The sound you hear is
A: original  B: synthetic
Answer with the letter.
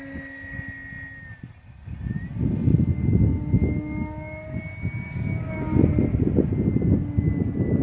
A